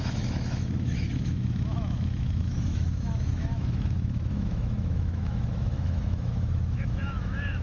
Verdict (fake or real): fake